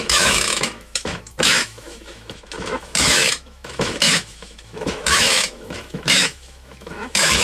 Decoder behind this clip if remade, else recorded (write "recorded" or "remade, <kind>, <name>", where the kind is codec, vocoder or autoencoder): remade, autoencoder, DAC-VAE